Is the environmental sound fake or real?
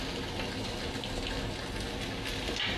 real